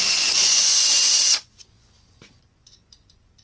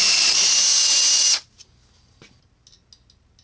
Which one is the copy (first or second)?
first